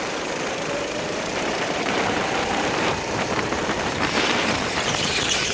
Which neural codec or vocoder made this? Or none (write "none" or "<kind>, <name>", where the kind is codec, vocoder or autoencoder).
vocoder, BigVGAN v2